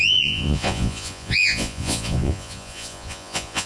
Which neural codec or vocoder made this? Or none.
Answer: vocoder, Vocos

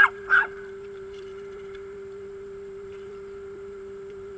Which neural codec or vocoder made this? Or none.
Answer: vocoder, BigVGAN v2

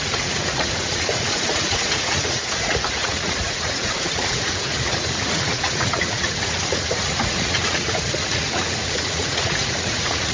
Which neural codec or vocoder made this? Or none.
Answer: vocoder, Vocos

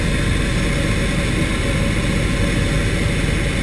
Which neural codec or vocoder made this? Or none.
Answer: none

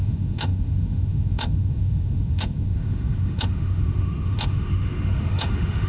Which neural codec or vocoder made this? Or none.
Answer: autoencoder, DAC-VAE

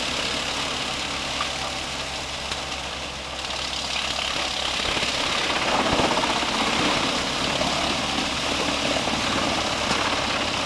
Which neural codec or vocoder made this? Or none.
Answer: none